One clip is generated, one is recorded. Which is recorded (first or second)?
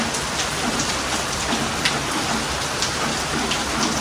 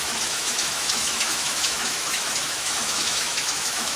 first